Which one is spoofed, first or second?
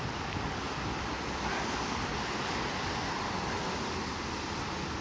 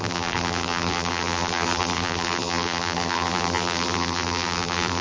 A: second